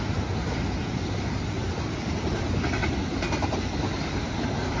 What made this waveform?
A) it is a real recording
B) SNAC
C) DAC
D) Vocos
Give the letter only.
A